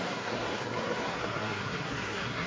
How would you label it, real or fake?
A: fake